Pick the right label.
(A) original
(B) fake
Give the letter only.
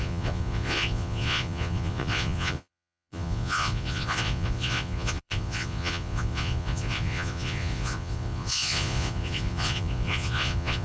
B